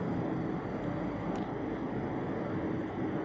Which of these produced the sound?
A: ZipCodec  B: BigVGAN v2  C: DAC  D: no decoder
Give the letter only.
D